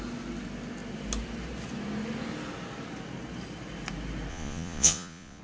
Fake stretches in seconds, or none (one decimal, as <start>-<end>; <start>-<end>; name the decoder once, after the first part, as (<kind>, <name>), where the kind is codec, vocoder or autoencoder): 4.3-5.4 (vocoder, Vocos)